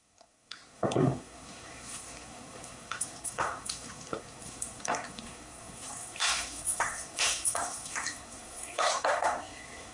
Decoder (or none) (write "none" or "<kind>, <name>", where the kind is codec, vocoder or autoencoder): codec, SNAC